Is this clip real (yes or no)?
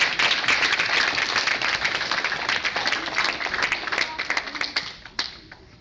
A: yes